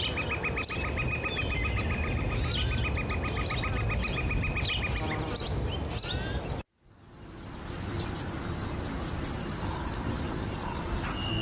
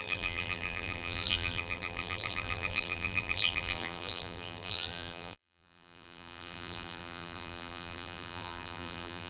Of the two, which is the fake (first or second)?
second